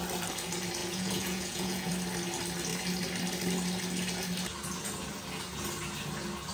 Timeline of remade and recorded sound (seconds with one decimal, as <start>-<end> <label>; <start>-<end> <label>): 0.0-0.8 recorded; 0.8-1.9 remade; 1.9-6.5 recorded